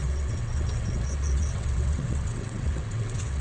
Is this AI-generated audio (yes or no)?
yes